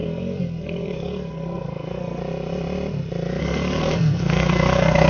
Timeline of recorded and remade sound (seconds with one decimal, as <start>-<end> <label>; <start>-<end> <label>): 0.0-2.2 remade; 2.2-3.4 recorded; 3.4-5.1 remade